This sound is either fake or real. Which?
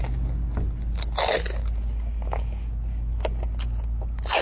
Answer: real